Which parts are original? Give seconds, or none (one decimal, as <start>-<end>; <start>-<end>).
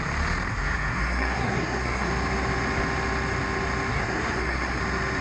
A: 0.0-0.5; 2.1-3.9; 4.8-5.2